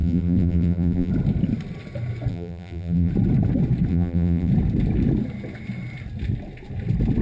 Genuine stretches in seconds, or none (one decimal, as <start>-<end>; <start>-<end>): 1.1-2.3; 3.1-3.9; 4.5-7.2